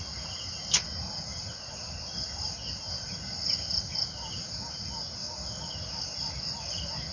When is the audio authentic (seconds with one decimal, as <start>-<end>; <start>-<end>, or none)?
0.0-7.1